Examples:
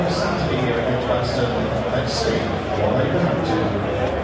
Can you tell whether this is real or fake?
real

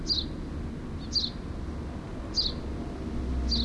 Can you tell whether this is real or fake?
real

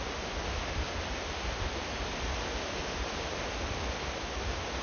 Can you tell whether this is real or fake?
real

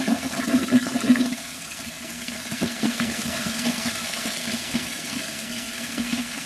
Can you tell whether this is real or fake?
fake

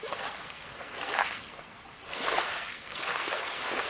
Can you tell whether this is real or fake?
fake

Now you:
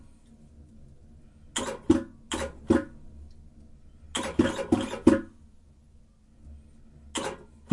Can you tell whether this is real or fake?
real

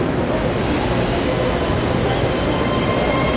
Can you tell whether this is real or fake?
real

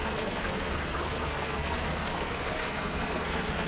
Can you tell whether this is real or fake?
fake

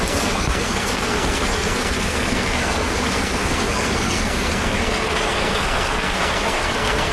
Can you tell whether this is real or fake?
fake